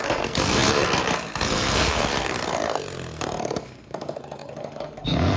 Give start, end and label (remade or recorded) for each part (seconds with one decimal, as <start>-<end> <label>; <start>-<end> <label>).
0.0-5.4 remade